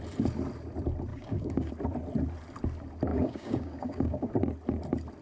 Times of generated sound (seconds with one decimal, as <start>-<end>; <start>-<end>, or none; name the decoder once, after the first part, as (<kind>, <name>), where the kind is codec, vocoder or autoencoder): 1.1-1.7 (codec, DAC); 3.1-4.3

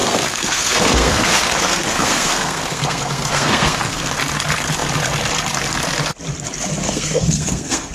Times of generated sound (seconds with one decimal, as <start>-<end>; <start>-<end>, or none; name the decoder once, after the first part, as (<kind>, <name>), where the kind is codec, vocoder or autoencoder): 0.0-4.1 (codec, SNAC); 6.8-7.9

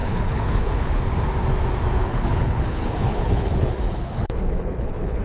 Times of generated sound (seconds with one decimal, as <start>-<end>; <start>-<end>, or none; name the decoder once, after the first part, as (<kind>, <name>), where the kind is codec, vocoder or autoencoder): 0.0-1.0 (codec, HILCodec); 2.0-5.2

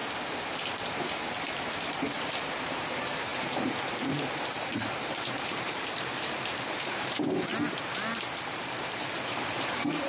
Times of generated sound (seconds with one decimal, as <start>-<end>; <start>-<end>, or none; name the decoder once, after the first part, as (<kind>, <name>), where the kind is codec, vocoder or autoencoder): 2.8-7.5 (vocoder, BigVGAN v2); 8.5-10.1

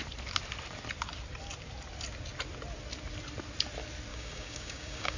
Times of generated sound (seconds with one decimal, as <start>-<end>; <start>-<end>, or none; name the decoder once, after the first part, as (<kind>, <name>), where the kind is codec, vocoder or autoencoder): 4.1-5.2 (codec, DAC)

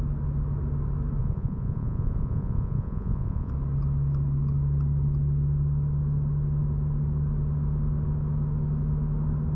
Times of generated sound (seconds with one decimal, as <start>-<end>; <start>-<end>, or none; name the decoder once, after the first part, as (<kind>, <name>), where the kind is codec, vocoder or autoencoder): 1.2-3.5 (vocoder, Vocos)

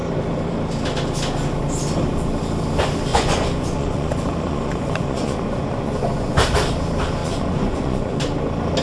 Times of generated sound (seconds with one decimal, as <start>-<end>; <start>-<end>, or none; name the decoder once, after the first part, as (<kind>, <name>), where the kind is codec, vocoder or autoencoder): 3.1-6.4 (vocoder, Vocos); 7.2-8.2